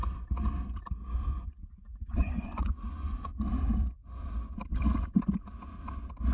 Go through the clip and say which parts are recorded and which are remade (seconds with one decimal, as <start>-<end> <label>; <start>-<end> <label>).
0.0-1.3 recorded; 1.3-3.3 remade; 3.3-6.3 recorded